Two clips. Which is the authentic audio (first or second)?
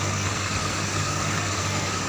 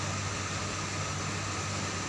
second